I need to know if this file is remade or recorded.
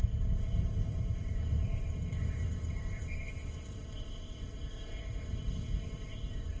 remade